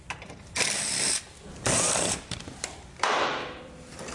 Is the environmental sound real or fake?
fake